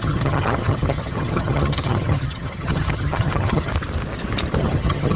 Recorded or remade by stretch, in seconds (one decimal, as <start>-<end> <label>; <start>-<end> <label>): 0.0-3.7 remade; 3.7-4.6 recorded; 4.6-5.2 remade